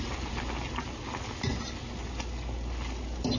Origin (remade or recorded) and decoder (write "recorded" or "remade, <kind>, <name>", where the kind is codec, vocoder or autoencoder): recorded